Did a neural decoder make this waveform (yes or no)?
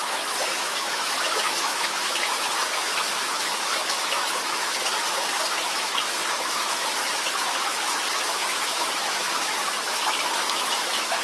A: yes